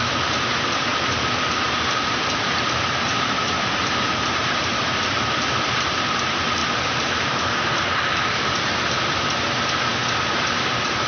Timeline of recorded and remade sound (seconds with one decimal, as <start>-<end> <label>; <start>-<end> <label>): 0.0-0.9 recorded; 0.9-4.6 remade; 4.6-6.6 recorded; 6.6-8.8 remade; 8.8-11.1 recorded